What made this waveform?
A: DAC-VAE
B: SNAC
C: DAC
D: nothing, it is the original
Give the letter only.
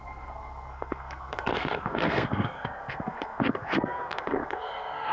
B